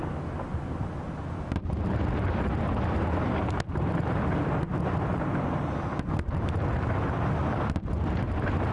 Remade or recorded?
recorded